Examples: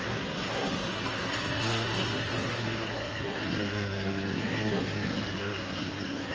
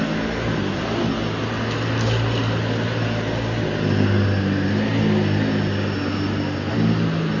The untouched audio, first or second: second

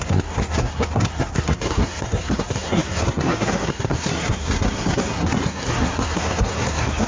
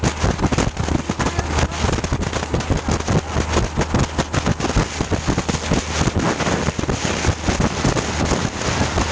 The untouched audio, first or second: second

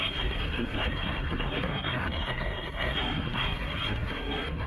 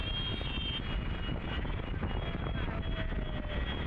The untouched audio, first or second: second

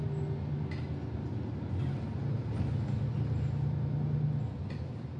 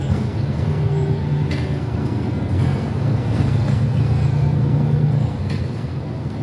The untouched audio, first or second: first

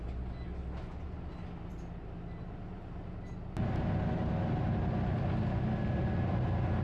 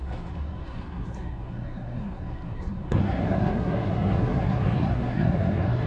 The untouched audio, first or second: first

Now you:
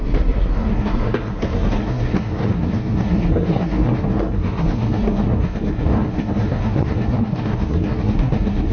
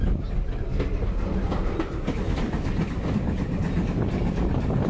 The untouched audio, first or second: second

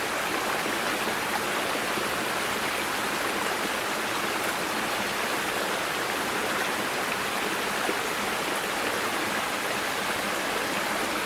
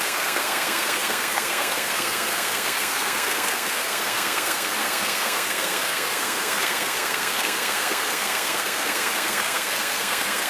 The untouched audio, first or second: first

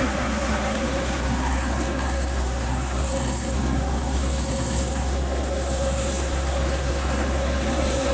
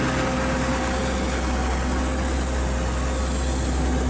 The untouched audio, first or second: second